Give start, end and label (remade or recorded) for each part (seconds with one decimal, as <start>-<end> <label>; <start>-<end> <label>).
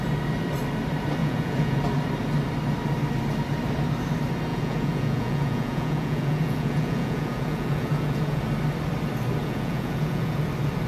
0.0-1.2 recorded; 1.2-1.8 remade; 1.8-4.5 recorded; 4.5-8.4 remade; 8.4-9.4 recorded; 9.4-10.5 remade; 10.5-10.9 recorded